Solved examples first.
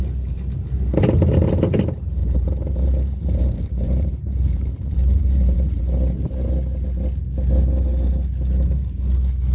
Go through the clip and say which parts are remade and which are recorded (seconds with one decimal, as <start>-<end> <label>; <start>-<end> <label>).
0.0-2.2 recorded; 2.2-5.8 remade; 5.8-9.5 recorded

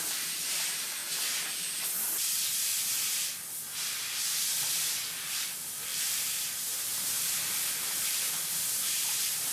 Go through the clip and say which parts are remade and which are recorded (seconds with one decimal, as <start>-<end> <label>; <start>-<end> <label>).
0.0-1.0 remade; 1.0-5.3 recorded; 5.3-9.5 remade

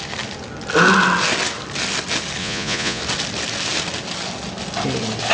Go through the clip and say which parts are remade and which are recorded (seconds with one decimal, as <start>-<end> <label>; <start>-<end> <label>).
0.0-2.4 recorded; 2.4-3.0 remade; 3.0-5.3 recorded

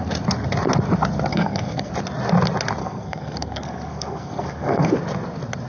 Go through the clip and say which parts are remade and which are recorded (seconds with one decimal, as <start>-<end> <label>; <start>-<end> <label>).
0.0-1.3 recorded; 1.3-1.9 remade; 1.9-2.8 recorded; 2.8-4.9 remade; 4.9-5.7 recorded

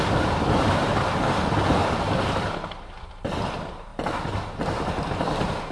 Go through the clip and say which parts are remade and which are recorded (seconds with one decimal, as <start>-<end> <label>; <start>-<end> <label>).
0.0-1.8 remade; 1.8-2.4 recorded; 2.4-3.9 remade; 3.9-4.6 recorded; 4.6-5.7 remade

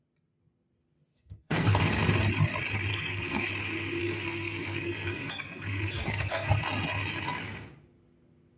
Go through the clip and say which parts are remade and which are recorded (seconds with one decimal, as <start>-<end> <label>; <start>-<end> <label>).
0.0-1.1 recorded; 1.1-1.8 remade; 1.8-2.9 recorded; 2.9-3.5 remade; 3.5-4.0 recorded; 4.0-6.6 remade; 6.6-8.6 recorded

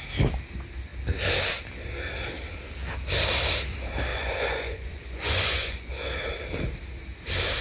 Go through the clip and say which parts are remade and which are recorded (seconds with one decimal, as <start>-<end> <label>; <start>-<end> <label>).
0.0-4.1 recorded; 4.1-5.9 remade; 5.9-7.6 recorded

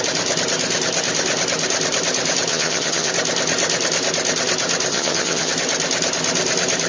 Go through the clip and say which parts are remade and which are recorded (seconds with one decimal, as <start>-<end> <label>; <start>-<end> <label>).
0.0-2.5 recorded; 2.5-3.1 remade; 3.1-4.9 recorded; 4.9-5.5 remade; 5.5-6.9 recorded